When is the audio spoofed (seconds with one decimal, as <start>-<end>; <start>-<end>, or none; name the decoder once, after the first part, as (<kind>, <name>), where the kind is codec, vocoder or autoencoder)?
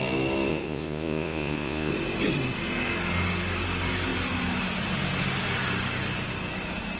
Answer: 0.5-1.9 (vocoder, Vocos)